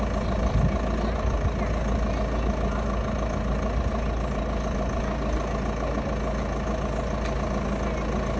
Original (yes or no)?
yes